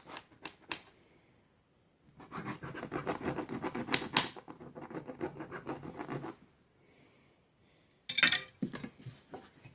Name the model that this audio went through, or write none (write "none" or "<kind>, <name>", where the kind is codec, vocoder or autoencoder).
none